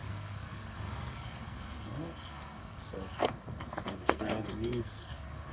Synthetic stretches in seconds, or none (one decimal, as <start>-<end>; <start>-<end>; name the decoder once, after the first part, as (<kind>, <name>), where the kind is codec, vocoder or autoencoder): 0.0-5.5 (codec, SNAC)